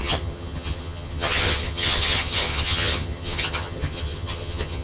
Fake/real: fake